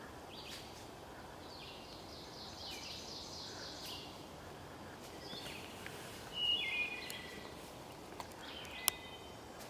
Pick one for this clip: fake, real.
real